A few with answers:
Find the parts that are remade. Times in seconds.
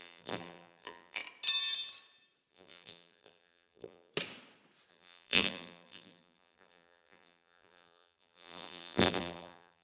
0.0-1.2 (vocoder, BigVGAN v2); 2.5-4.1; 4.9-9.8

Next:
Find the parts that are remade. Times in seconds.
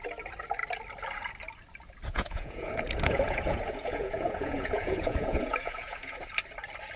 2.1-6.3 (vocoder, Vocos)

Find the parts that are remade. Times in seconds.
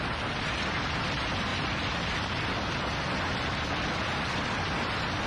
none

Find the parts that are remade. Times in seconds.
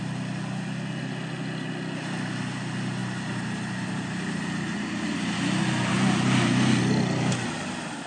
none